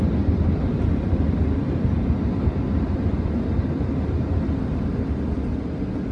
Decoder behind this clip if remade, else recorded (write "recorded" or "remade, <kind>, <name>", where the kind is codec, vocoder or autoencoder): recorded